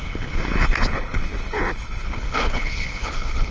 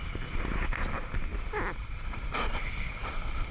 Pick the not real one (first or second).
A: first